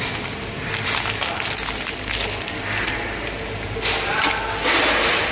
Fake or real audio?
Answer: real